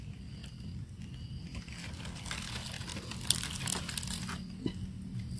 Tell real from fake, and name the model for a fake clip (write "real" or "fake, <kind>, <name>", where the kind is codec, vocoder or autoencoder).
real